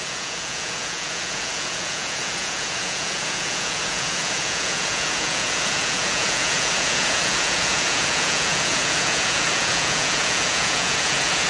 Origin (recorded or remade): remade